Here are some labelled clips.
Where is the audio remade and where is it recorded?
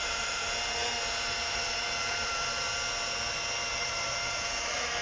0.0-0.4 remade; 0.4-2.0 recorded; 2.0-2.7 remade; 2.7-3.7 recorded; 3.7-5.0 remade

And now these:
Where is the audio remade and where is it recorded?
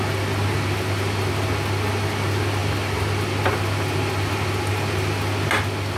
0.0-6.0 recorded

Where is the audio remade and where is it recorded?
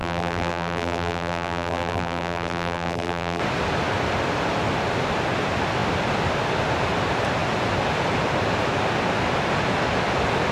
0.0-3.4 remade; 3.4-10.5 recorded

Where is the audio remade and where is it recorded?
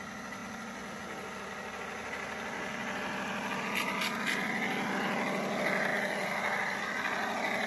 0.0-5.9 recorded; 5.9-6.8 remade; 6.8-7.7 recorded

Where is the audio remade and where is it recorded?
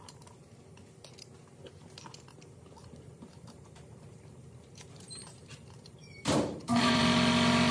0.0-2.8 recorded; 2.8-7.0 remade; 7.0-7.7 recorded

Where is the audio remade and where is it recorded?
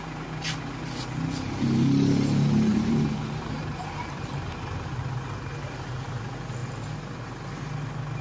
0.0-2.7 recorded; 2.7-6.1 remade; 6.1-8.2 recorded